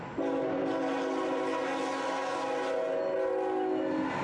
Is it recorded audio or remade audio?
recorded